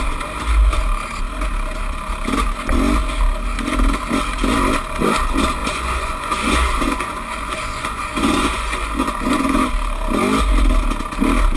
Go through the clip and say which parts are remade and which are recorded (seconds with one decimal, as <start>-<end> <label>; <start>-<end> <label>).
0.0-5.6 recorded; 5.6-9.7 remade; 9.7-11.6 recorded

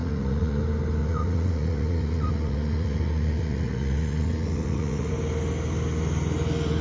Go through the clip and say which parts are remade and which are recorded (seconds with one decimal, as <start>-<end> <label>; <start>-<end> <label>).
0.0-0.6 remade; 0.6-1.0 recorded; 1.0-5.1 remade; 5.1-6.8 recorded

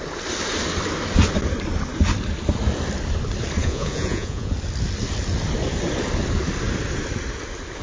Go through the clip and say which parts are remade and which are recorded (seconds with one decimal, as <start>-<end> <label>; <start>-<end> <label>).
0.0-3.6 recorded; 3.6-4.5 remade; 4.5-7.8 recorded

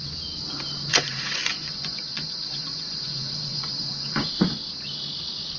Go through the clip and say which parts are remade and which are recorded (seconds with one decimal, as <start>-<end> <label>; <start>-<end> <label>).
0.0-0.9 recorded; 0.9-4.3 remade; 4.3-5.6 recorded

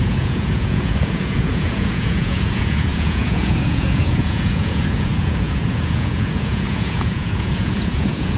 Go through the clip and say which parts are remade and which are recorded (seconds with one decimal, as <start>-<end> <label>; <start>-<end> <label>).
0.0-8.4 remade

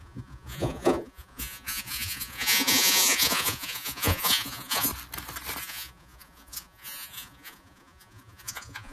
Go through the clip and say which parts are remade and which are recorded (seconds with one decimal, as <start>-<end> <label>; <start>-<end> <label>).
0.0-4.9 remade; 4.9-5.6 recorded; 5.6-8.9 remade